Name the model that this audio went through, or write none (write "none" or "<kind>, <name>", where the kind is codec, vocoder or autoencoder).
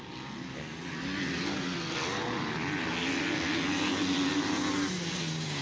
none